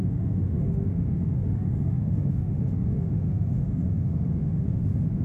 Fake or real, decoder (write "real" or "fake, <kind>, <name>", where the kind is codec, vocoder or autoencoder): fake, autoencoder, DAC-VAE